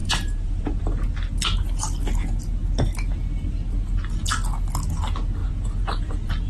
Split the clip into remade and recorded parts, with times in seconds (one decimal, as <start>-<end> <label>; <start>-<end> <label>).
0.0-0.8 remade; 0.8-5.4 recorded; 5.4-6.5 remade